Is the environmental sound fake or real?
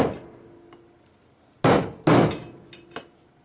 real